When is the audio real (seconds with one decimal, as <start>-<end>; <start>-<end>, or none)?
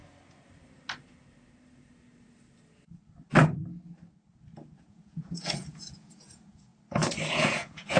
0.0-4.8; 6.7-7.3